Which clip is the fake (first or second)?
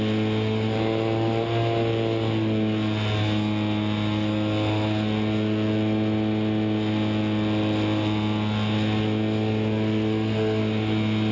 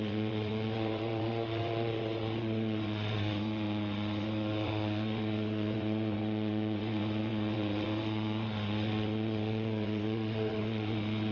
second